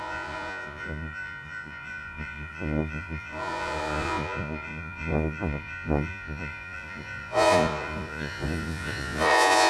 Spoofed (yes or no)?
yes